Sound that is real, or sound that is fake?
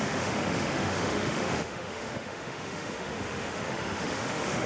fake